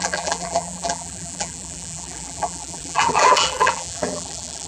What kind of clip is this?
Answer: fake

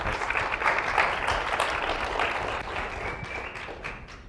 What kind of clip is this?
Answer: real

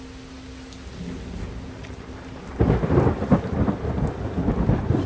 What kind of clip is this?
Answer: real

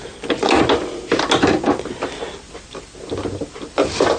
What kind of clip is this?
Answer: real